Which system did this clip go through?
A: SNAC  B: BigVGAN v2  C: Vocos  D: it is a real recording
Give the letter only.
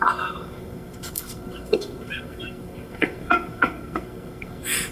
A